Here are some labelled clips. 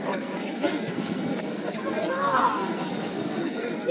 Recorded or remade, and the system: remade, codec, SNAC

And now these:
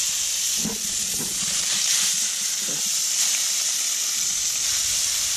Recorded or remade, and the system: remade, vocoder, BigVGAN v2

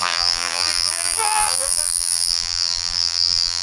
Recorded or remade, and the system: remade, vocoder, BigVGAN v2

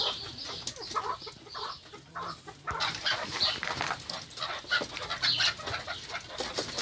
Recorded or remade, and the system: recorded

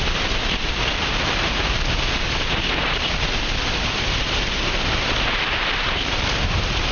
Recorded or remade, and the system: remade, vocoder, BigVGAN v2